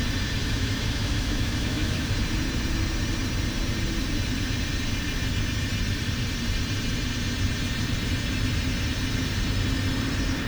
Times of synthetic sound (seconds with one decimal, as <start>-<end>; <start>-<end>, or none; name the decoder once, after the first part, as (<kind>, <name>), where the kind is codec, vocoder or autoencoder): 0.4-2.1 (autoencoder, DAC-VAE)